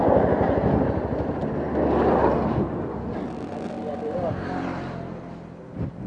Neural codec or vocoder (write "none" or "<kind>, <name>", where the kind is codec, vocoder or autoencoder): none